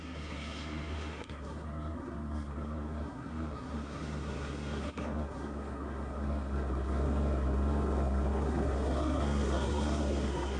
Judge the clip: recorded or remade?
remade